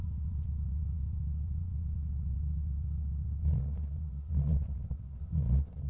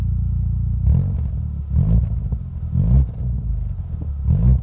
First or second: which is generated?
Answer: first